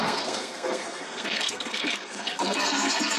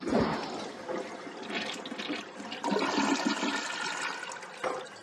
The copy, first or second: first